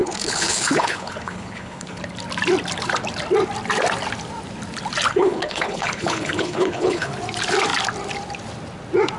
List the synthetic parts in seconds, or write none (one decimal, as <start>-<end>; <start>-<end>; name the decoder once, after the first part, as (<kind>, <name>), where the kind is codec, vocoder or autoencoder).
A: 0.0-2.0 (codec, HILCodec); 5.1-7.1